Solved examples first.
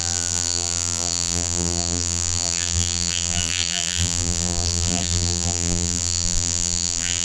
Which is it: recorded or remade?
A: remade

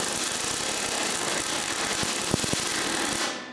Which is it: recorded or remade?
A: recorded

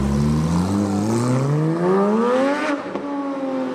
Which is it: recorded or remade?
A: recorded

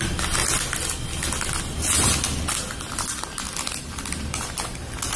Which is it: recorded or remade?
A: recorded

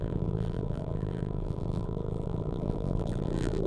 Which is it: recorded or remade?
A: remade